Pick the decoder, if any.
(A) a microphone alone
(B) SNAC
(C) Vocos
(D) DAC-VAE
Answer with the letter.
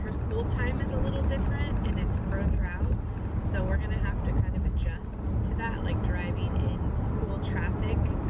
A